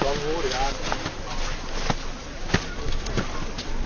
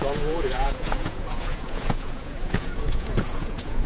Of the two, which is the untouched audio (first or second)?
first